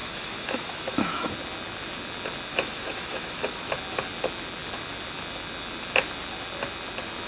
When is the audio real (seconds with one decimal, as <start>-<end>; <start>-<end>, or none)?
1.3-2.5; 3.7-7.3